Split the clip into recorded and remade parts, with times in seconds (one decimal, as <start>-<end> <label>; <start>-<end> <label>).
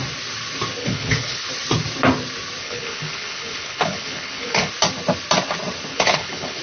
0.0-0.8 recorded; 0.8-1.5 remade; 1.5-2.6 recorded; 2.6-4.7 remade; 4.7-5.9 recorded; 5.9-6.6 remade